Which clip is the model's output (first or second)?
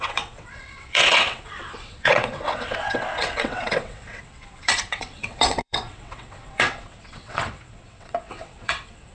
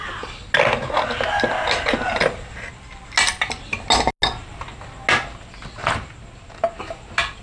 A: first